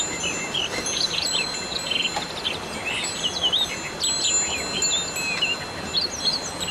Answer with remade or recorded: recorded